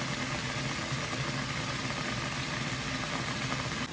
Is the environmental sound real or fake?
real